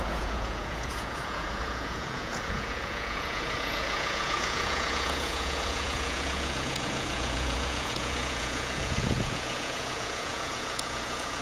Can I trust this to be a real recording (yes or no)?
no